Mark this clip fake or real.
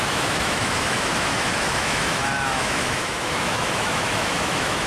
fake